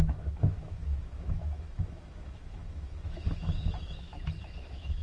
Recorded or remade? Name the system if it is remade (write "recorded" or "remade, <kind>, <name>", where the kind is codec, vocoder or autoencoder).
remade, autoencoder, DAC-VAE